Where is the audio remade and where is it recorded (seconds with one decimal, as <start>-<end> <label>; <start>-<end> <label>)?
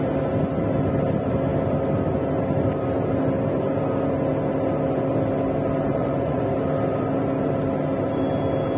0.0-5.9 recorded; 5.9-6.4 remade; 6.4-8.8 recorded